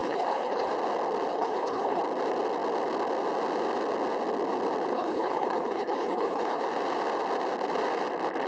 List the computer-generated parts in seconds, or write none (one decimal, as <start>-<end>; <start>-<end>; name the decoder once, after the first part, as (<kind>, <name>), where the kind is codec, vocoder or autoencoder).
0.0-0.7 (codec, HILCodec); 1.3-2.0; 4.9-6.6